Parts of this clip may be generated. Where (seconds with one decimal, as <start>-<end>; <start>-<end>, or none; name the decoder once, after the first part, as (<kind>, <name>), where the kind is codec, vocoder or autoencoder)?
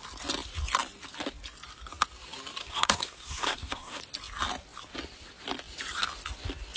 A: 2.6-4.0 (codec, SNAC)